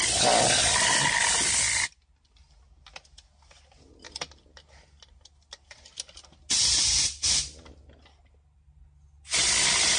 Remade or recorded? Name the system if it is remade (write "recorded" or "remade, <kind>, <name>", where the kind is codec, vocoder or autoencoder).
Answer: recorded